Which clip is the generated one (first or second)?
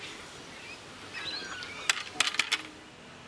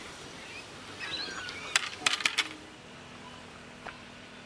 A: second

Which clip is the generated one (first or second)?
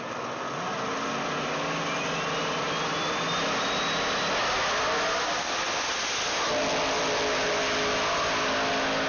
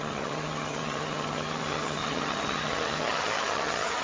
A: second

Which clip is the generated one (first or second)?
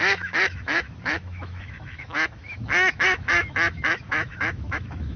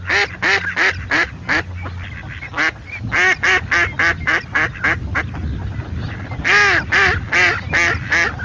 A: first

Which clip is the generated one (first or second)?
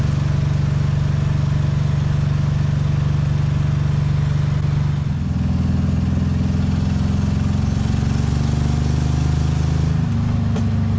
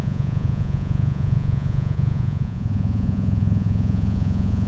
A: second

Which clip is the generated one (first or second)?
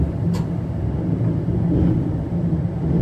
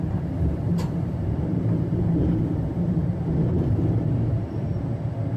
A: second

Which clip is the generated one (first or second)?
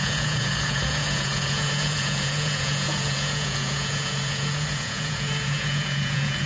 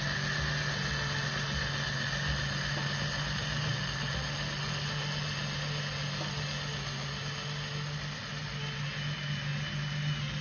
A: first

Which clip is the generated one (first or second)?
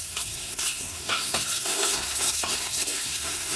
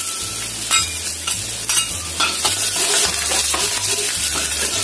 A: first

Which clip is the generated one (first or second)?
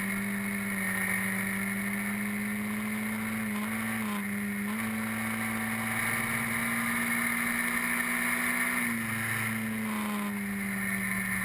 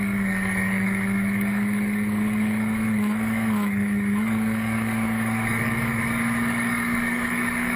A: second